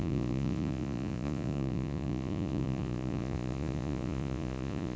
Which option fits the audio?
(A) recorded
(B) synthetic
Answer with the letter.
B